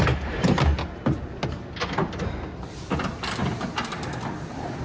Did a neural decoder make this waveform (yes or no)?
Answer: no